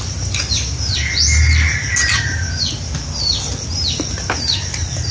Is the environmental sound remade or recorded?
recorded